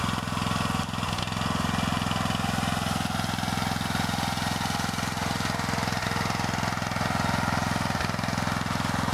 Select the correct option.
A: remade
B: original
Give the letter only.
B